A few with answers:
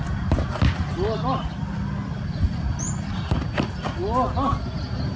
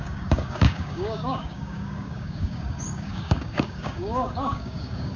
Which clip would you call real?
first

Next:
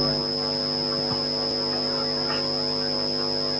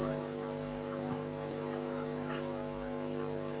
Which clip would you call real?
first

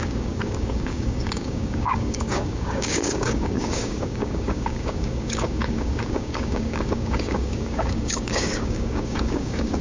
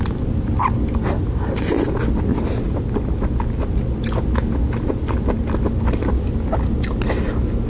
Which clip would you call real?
second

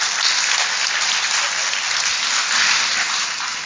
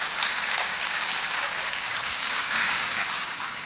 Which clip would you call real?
first